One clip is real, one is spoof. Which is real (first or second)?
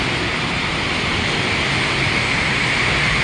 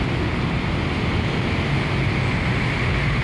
second